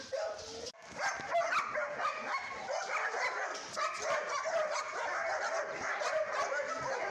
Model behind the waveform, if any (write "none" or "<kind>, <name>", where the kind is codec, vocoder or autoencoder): none